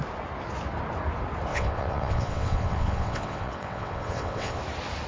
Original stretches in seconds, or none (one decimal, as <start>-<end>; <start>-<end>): 0.0-1.5; 4.6-5.1